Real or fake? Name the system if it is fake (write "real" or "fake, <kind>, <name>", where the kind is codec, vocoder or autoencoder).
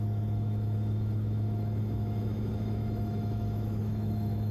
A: fake, autoencoder, DAC-VAE